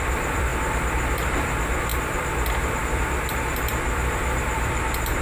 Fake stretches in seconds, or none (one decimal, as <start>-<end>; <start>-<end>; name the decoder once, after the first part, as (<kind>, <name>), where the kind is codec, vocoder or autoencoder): 0.0-0.5 (vocoder, BigVGAN v2); 1.1-5.2